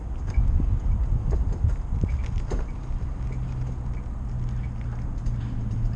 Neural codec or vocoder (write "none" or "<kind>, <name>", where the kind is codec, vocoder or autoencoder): none